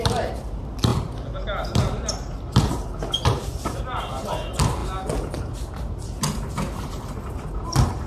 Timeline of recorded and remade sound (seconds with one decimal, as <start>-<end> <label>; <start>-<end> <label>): 0.0-8.1 recorded

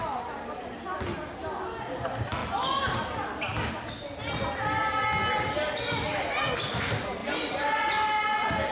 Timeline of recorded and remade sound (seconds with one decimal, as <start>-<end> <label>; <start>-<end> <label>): 0.0-7.2 recorded; 7.2-7.9 remade; 7.9-8.7 recorded

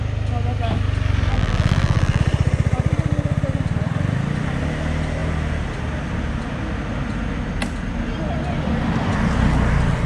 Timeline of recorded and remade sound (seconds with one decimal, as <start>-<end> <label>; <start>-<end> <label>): 0.0-1.3 recorded; 1.3-2.2 remade; 2.2-10.1 recorded

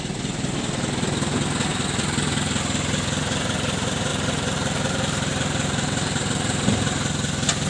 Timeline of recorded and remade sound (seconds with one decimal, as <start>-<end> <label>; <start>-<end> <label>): 0.0-4.1 recorded; 4.1-6.2 remade; 6.2-7.7 recorded

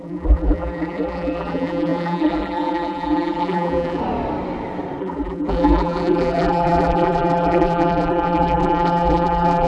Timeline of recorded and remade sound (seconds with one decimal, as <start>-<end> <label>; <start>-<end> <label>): 0.0-4.0 remade; 4.0-5.0 recorded; 5.0-9.7 remade

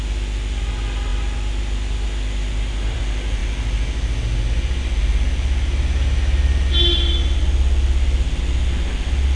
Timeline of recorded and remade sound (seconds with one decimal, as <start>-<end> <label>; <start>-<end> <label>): 0.0-1.1 recorded; 1.1-3.0 remade; 3.0-9.4 recorded

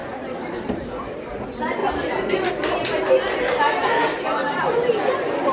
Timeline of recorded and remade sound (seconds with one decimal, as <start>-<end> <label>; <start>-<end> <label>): 0.0-1.1 remade; 1.1-3.8 recorded; 3.8-4.9 remade; 4.9-5.5 recorded